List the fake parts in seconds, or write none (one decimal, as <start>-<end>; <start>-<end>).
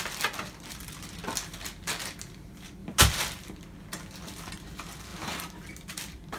2.8-3.6; 5.1-5.7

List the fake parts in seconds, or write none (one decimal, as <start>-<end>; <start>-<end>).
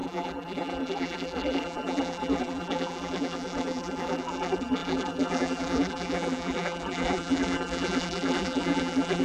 0.0-9.2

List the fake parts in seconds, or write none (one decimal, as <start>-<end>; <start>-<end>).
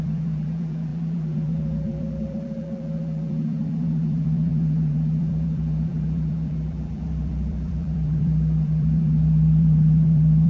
0.0-10.5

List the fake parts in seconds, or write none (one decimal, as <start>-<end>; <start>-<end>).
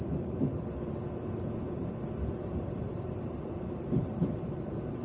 0.0-0.5; 2.5-5.0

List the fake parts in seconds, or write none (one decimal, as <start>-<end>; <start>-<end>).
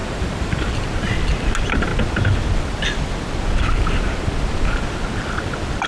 0.0-0.9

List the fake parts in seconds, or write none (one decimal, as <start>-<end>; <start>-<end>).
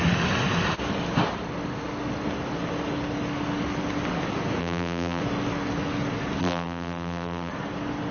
4.6-5.2; 6.4-7.5